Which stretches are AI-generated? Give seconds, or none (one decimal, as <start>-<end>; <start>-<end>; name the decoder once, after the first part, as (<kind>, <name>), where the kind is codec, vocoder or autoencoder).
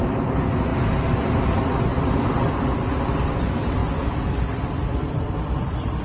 none